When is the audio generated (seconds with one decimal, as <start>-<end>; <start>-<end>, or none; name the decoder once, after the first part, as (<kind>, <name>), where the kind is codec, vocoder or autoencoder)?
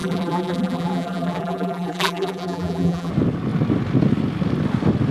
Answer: 0.0-3.1 (vocoder, BigVGAN v2)